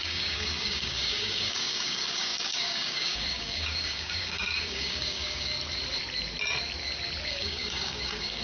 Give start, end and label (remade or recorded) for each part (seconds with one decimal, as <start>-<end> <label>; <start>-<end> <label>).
0.0-5.5 remade; 5.5-7.3 recorded; 7.3-8.4 remade